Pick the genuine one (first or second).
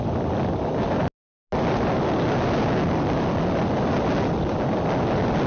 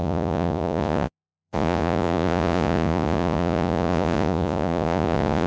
first